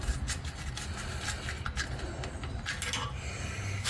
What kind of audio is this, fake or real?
real